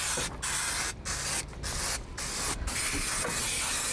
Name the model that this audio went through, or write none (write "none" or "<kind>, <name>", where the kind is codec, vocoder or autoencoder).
none